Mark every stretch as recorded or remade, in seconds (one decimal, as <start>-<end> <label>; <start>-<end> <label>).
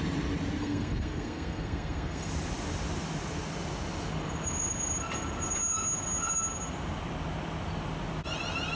0.0-0.6 recorded; 0.6-2.3 remade; 2.3-8.8 recorded